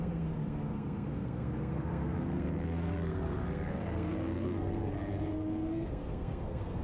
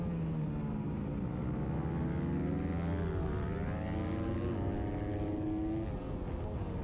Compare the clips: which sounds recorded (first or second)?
second